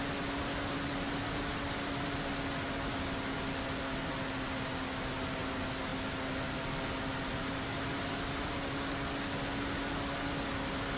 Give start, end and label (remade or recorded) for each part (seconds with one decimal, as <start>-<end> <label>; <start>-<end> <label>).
0.0-11.0 recorded